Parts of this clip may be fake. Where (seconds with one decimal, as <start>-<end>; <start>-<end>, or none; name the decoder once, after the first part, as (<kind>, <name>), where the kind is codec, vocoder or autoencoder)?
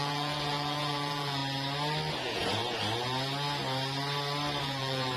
0.0-1.4 (vocoder, Vocos); 2.1-2.6; 4.6-5.2